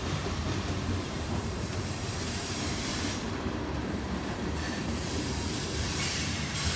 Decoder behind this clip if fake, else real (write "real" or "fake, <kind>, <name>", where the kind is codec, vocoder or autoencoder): fake, vocoder, BigVGAN v2